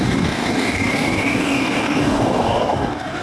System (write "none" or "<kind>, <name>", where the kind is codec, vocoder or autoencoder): codec, DAC